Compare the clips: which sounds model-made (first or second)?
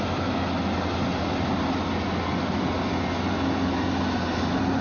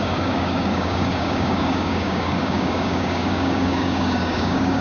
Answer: second